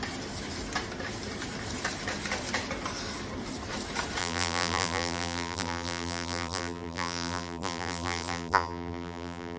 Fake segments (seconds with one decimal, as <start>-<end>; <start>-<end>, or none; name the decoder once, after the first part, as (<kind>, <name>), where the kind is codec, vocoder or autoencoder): 4.2-9.6 (vocoder, BigVGAN v2)